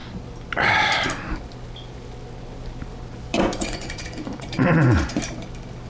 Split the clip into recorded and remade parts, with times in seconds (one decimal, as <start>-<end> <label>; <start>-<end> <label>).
0.0-3.3 recorded; 3.3-5.2 remade; 5.2-5.9 recorded